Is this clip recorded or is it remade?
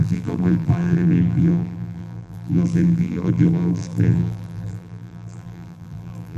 remade